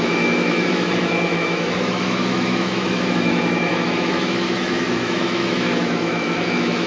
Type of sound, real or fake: fake